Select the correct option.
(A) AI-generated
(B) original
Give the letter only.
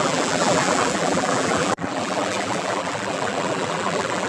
A